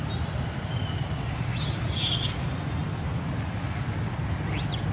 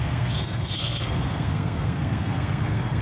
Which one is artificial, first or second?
second